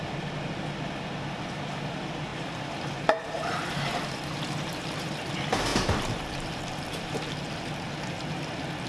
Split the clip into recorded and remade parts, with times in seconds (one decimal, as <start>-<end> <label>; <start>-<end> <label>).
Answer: 0.0-2.3 recorded; 2.3-5.1 remade; 5.1-5.7 recorded; 5.7-7.1 remade; 7.1-8.9 recorded

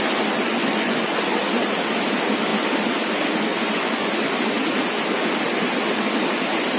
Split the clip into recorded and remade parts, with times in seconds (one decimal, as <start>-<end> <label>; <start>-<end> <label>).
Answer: 0.0-0.5 recorded; 0.5-1.4 remade; 1.4-3.5 recorded; 3.5-4.3 remade; 4.3-6.8 recorded

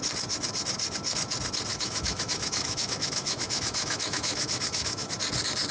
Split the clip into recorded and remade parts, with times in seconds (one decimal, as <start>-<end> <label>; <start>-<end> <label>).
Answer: 0.0-1.7 recorded; 1.7-5.1 remade; 5.1-5.7 recorded

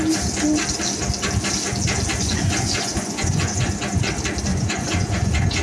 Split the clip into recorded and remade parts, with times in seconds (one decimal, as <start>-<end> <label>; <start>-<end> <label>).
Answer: 0.0-2.2 recorded; 2.2-4.0 remade; 4.0-4.5 recorded; 4.5-5.6 remade